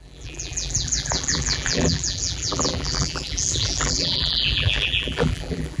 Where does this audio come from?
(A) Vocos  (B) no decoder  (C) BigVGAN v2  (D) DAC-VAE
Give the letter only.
C